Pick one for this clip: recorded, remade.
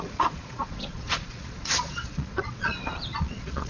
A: remade